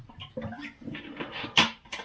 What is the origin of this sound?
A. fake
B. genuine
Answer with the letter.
A